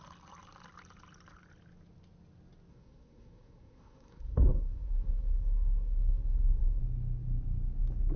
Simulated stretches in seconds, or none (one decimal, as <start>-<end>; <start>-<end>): 2.7-6.8